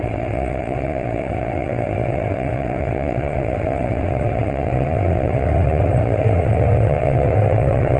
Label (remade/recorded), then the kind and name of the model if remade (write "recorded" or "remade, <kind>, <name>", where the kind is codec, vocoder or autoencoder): remade, vocoder, WaveNeXt